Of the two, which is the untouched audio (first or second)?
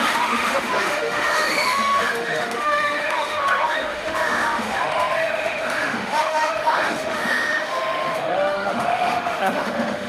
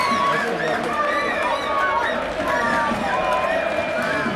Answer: second